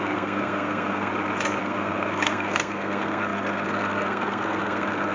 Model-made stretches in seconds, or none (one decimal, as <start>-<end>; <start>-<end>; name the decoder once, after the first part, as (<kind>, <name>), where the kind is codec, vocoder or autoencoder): 0.0-1.1 (codec, SNAC); 1.6-5.1